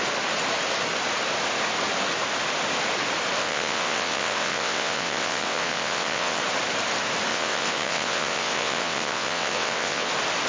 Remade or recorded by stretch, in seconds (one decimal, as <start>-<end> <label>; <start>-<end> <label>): 0.0-3.4 recorded; 3.4-6.4 remade; 6.4-7.3 recorded; 7.3-10.1 remade; 10.1-10.5 recorded

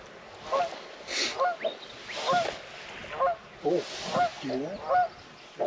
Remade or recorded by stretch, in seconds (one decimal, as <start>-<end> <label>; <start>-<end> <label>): 0.0-5.7 recorded

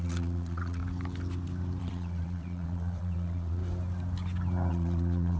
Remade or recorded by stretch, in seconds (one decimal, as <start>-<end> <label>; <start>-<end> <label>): 0.0-0.8 remade; 0.8-1.8 recorded; 1.8-3.6 remade; 3.6-4.7 recorded; 4.7-5.4 remade

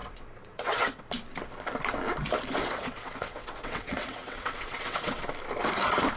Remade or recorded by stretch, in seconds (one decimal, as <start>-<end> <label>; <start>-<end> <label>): 0.0-1.0 remade; 1.0-2.6 recorded; 2.6-5.2 remade; 5.2-6.2 recorded

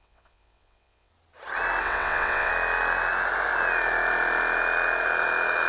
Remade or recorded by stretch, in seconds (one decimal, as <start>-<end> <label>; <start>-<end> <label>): 0.0-1.1 remade; 1.1-1.8 recorded; 1.8-2.5 remade; 2.5-5.7 recorded